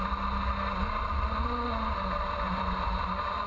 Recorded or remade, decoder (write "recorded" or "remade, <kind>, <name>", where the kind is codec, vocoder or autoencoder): recorded